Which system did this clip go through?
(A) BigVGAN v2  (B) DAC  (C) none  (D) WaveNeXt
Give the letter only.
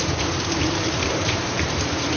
A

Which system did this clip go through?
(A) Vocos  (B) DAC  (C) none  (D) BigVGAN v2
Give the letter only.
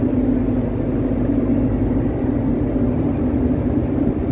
C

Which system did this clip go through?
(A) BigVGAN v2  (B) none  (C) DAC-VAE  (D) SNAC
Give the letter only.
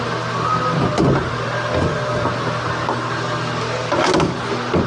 B